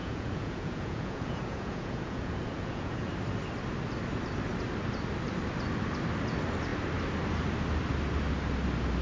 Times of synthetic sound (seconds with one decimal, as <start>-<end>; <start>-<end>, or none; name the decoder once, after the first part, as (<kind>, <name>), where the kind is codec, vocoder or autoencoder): 0.0-3.1 (vocoder, Vocos)